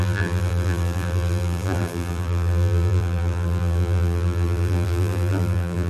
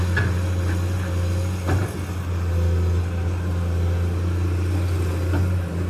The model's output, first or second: first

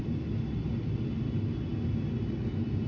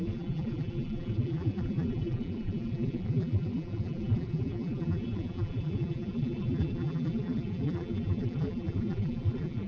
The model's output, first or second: second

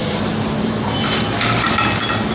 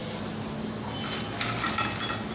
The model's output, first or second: first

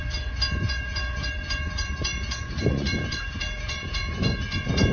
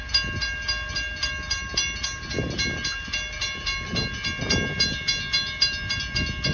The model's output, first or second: first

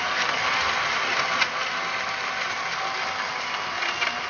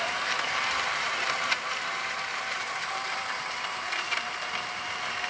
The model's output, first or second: second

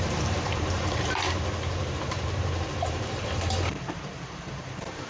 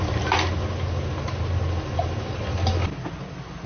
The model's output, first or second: first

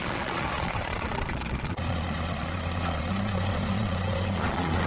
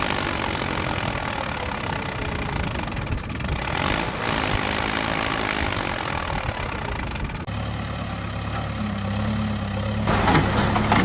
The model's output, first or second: first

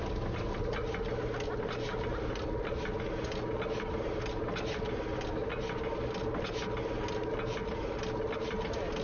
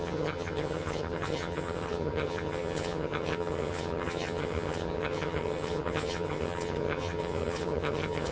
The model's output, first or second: second